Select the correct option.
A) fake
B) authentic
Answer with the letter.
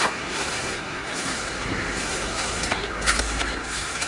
A